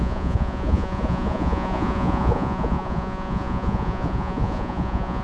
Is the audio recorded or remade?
remade